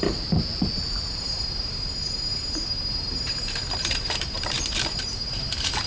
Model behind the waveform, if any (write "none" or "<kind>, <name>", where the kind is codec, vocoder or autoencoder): vocoder, BigVGAN v2